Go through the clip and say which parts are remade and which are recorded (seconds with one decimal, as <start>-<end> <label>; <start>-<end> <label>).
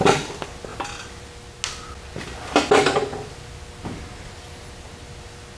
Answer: 0.0-5.6 recorded